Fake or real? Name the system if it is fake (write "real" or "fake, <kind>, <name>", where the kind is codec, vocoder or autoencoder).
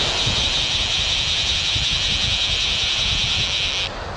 real